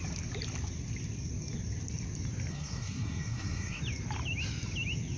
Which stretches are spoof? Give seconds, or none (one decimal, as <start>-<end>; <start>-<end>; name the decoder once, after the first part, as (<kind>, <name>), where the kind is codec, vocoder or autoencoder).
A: 2.5-3.8 (codec, SNAC)